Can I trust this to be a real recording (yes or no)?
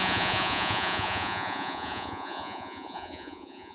no